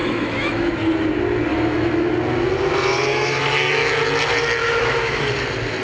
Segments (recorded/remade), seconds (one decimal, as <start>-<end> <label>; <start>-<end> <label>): 0.0-0.7 remade; 0.7-1.5 recorded; 1.5-2.1 remade; 2.1-3.1 recorded; 3.1-3.9 remade; 3.9-4.6 recorded; 4.6-5.2 remade; 5.2-5.8 recorded